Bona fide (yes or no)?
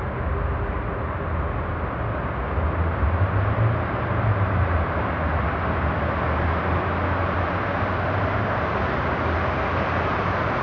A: yes